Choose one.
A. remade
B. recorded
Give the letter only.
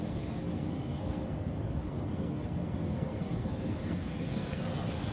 A